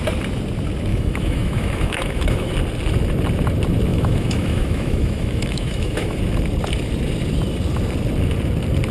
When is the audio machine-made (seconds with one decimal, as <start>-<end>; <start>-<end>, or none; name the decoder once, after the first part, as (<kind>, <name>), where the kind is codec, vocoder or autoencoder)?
0.9-2.5 (autoencoder, DAC-VAE); 3.9-6.2